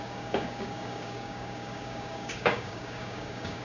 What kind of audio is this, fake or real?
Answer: fake